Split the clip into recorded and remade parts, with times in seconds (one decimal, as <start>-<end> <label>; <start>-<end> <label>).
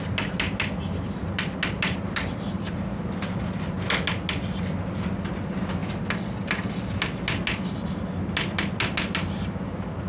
0.0-10.1 recorded